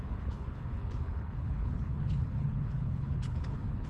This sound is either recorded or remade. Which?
remade